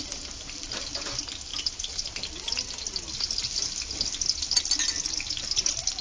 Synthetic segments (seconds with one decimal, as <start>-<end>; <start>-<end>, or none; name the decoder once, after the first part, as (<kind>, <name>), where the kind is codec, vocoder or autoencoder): none